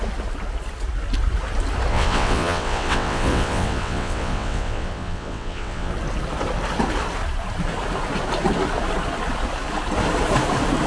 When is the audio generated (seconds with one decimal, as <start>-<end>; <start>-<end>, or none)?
1.9-5.9